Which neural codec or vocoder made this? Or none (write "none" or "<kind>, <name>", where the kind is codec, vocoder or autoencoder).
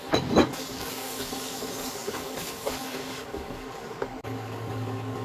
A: codec, DAC